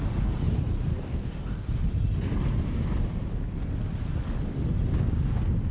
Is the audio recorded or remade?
recorded